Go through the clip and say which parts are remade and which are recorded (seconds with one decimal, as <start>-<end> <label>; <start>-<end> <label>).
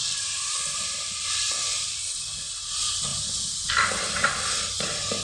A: 0.0-2.0 remade; 2.0-3.1 recorded; 3.1-3.7 remade; 3.7-5.2 recorded